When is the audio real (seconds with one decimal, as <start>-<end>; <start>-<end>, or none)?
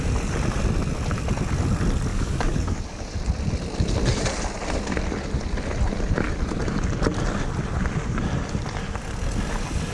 0.0-2.1; 3.1-9.9